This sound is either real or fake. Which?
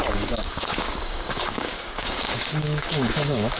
fake